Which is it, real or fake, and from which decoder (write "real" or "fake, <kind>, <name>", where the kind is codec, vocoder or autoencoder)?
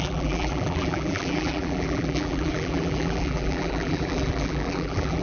fake, vocoder, BigVGAN v2